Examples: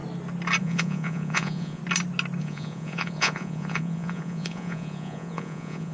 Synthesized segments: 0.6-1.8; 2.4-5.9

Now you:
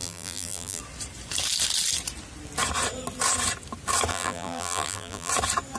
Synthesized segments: 0.0-0.8; 4.1-5.3